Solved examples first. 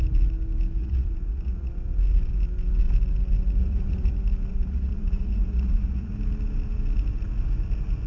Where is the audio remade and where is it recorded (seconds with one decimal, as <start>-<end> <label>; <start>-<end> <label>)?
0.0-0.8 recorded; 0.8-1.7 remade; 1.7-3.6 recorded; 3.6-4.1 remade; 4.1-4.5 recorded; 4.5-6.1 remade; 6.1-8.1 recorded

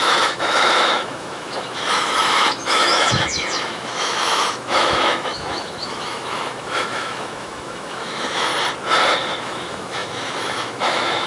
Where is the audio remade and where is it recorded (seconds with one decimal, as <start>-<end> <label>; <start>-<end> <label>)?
0.0-8.5 remade; 8.5-9.4 recorded; 9.4-11.3 remade

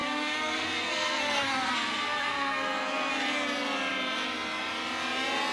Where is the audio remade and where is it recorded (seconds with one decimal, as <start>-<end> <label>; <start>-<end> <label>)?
0.0-3.1 remade; 3.1-5.5 recorded

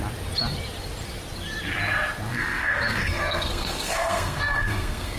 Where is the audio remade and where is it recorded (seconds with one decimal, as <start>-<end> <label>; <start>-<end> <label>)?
0.0-2.3 recorded; 2.3-5.2 remade

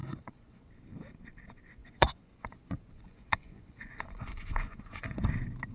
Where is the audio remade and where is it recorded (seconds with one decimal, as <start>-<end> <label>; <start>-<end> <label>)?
0.0-0.7 remade; 0.7-1.8 recorded; 1.8-5.2 remade; 5.2-5.7 recorded

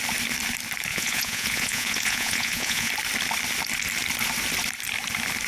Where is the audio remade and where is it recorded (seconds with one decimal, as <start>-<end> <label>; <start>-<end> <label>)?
0.0-0.9 recorded; 0.9-2.9 remade; 2.9-5.5 recorded